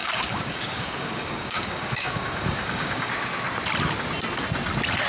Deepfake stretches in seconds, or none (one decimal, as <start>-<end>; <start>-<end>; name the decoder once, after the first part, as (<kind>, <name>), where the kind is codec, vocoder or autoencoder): 0.0-3.1 (codec, DAC)